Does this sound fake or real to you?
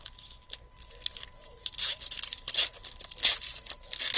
real